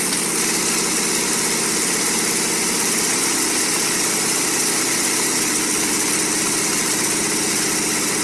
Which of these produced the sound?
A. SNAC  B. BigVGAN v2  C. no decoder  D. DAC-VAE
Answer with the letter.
C